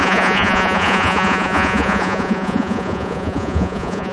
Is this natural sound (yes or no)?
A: no